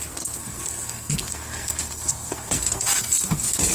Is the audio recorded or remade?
remade